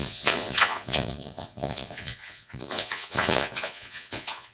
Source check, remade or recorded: remade